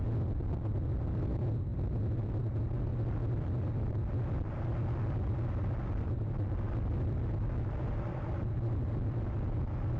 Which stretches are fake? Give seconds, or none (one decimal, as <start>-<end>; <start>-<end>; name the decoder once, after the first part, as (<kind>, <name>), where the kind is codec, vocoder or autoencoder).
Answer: none